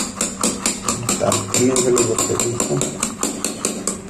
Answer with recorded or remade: recorded